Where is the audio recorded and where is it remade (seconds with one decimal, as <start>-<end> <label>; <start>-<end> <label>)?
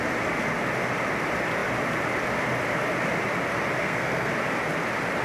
0.0-3.8 recorded; 3.8-4.3 remade; 4.3-5.2 recorded